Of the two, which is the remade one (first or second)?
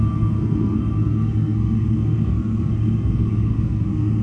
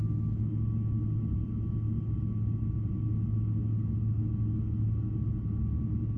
first